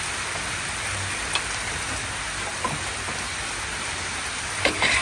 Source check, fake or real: real